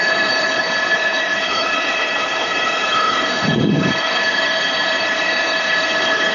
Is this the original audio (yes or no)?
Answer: no